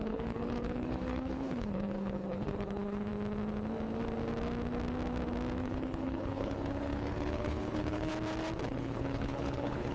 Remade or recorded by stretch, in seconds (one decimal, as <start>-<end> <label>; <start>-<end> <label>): 0.0-3.1 remade; 3.1-5.6 recorded; 5.6-8.1 remade; 8.1-8.6 recorded; 8.6-9.9 remade